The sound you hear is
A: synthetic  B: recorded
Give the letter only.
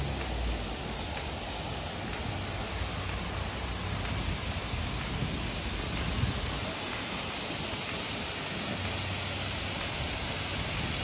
B